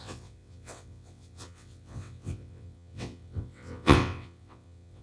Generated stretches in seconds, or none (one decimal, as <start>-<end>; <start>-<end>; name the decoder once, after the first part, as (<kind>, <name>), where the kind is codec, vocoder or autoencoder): 0.0-5.0 (vocoder, WaveNeXt)